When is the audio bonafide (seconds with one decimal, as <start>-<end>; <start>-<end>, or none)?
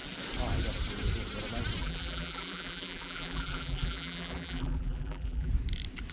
0.0-1.8; 5.5-6.1